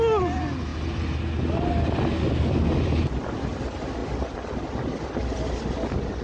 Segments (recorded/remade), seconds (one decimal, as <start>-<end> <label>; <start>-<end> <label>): 0.0-6.2 recorded